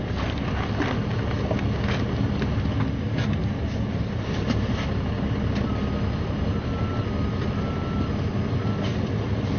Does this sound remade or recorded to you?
recorded